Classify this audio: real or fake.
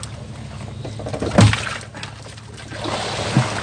real